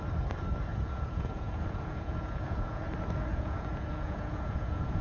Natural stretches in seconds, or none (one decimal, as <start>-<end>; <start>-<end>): 0.0-0.7; 2.8-3.3